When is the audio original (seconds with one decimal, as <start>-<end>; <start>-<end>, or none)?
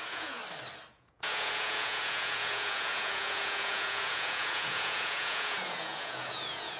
0.4-0.9